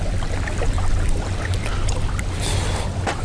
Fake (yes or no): no